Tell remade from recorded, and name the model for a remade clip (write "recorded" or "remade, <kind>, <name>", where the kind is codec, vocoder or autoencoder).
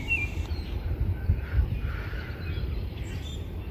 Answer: remade, vocoder, BigVGAN v2